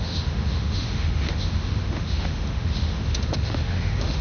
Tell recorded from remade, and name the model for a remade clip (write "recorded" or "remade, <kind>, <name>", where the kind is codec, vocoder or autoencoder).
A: remade, autoencoder, DAC-VAE